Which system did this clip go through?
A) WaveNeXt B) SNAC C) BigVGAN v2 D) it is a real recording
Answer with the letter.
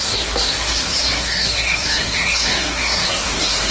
B